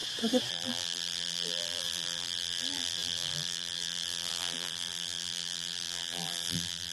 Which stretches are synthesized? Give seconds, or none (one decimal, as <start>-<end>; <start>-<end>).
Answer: 0.5-6.9